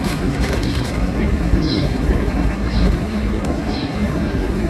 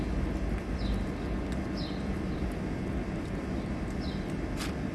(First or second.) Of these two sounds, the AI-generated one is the first